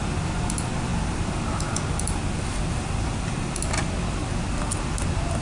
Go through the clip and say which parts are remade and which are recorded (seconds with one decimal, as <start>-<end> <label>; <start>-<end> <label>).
0.0-0.9 recorded; 0.9-3.6 remade; 3.6-4.2 recorded; 4.2-4.8 remade; 4.8-5.4 recorded